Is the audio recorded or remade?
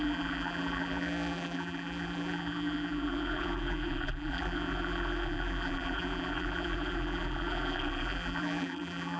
remade